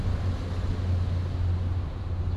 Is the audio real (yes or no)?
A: yes